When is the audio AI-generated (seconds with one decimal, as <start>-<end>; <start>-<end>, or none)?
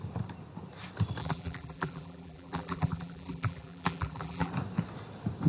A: 1.2-4.5